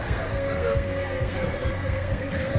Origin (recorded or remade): remade